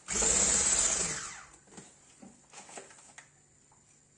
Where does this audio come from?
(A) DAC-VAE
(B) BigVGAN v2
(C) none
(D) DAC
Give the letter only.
C